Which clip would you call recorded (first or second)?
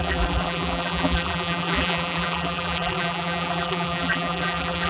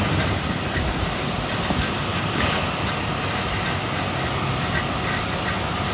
second